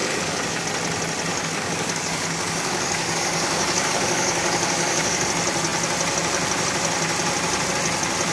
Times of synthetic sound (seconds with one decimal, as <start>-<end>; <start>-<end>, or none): 0.0-0.6; 1.3-5.3